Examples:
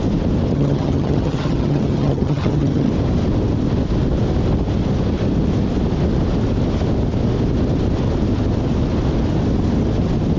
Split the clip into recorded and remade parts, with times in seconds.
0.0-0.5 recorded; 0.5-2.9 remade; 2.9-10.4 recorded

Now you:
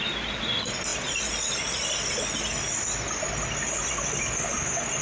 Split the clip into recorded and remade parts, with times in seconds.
0.0-5.0 recorded